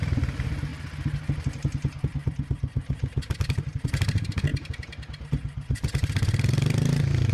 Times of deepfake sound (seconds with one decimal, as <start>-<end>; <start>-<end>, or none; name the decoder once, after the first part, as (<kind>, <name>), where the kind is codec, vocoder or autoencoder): 0.0-0.7 (vocoder, BigVGAN v2); 2.0-7.3